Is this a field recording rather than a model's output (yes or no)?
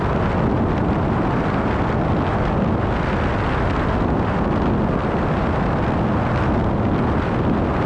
yes